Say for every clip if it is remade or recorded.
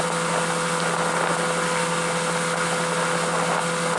recorded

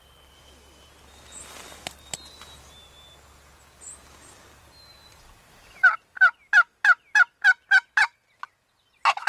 recorded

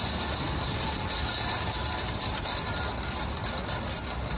recorded